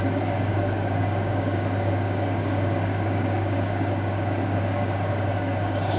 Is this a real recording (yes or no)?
no